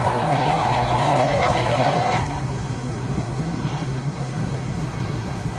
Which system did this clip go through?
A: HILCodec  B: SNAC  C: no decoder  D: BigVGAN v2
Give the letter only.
B